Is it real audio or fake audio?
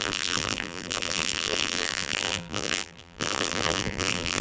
fake